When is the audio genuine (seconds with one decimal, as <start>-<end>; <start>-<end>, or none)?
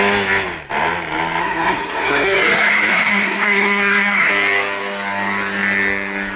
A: 0.0-1.4; 4.3-6.4